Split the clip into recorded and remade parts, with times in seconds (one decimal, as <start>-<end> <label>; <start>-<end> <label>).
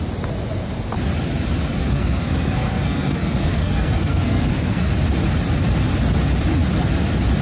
0.0-1.8 recorded; 1.8-4.9 remade; 4.9-7.4 recorded